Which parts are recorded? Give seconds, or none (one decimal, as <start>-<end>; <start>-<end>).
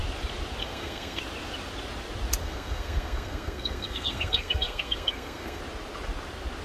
0.0-0.6; 1.2-2.4; 5.6-6.6